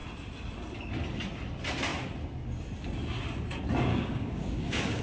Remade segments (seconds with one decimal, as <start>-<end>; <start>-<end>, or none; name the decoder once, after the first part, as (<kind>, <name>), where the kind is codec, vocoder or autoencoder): 3.9-5.0 (codec, DAC)